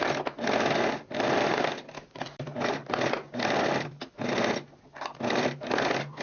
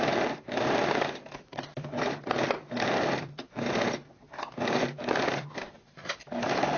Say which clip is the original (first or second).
first